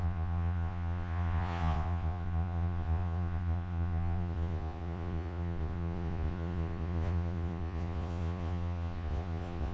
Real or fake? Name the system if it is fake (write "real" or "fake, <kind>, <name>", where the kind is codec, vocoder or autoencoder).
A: fake, vocoder, Vocos